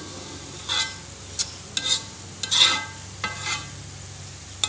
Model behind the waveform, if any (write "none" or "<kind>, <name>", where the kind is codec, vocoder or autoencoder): none